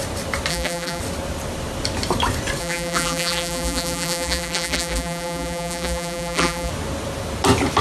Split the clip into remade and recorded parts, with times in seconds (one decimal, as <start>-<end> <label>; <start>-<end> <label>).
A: 0.0-0.5 recorded; 0.5-1.0 remade; 1.0-2.6 recorded; 2.6-6.7 remade; 6.7-7.8 recorded